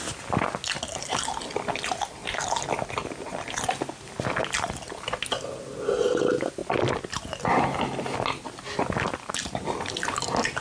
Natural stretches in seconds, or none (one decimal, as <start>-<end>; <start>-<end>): 0.0-10.6